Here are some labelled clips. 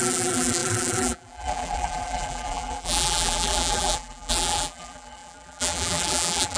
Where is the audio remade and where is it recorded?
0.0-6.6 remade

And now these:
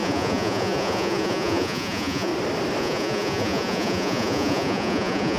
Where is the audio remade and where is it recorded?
0.0-2.3 remade; 2.3-2.8 recorded; 2.8-5.4 remade

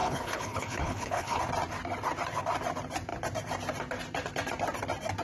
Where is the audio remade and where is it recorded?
0.0-1.4 remade; 1.4-5.2 recorded

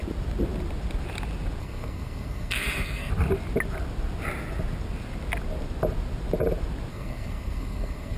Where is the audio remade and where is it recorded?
0.0-1.6 recorded; 1.6-3.1 remade; 3.1-6.9 recorded; 6.9-8.2 remade